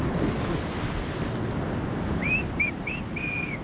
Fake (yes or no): no